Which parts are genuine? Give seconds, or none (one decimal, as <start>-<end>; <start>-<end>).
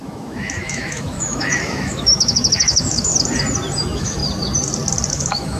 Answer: 3.1-3.8; 4.2-5.1